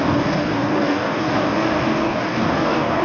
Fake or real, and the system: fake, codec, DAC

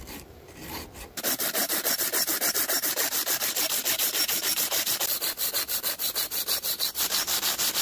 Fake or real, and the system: fake, vocoder, BigVGAN v2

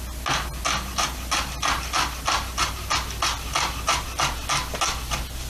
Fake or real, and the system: real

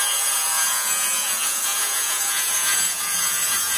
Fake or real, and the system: fake, vocoder, Vocos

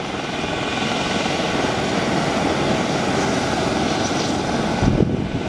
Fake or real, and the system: real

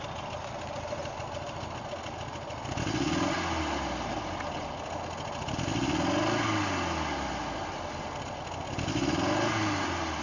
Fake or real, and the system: real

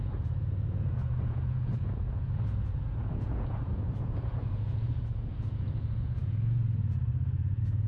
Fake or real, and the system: fake, vocoder, Vocos